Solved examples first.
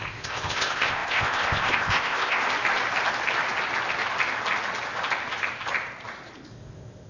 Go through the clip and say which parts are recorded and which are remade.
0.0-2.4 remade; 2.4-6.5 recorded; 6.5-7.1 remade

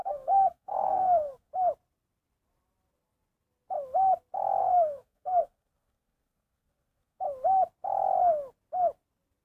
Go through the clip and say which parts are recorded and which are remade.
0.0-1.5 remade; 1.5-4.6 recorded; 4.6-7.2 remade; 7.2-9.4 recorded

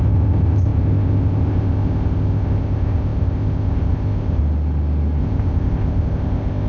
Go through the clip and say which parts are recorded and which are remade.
0.0-4.4 remade; 4.4-5.2 recorded; 5.2-6.7 remade